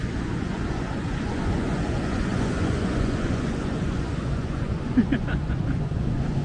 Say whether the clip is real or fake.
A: fake